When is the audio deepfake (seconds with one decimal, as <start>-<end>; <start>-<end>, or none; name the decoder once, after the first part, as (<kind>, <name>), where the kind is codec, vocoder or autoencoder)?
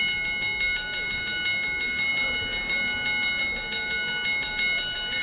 none